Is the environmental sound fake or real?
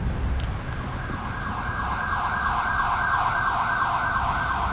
real